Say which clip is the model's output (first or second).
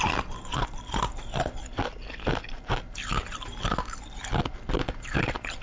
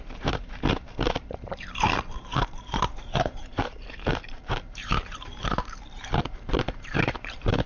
second